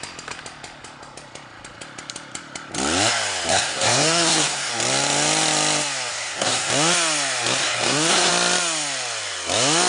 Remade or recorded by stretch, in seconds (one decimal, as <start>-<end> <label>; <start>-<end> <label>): 0.0-3.5 recorded; 3.5-4.7 remade; 4.7-6.1 recorded; 6.1-6.7 remade; 6.7-7.6 recorded; 7.6-8.3 remade; 8.3-9.9 recorded